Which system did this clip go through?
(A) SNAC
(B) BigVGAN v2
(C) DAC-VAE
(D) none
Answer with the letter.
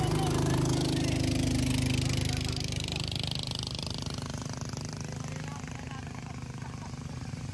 D